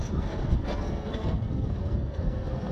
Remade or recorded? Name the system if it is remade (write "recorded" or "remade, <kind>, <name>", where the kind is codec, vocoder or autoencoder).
remade, codec, SNAC